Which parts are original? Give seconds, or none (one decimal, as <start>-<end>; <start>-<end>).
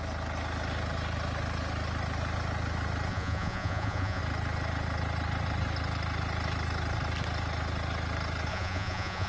0.0-3.1; 4.2-8.5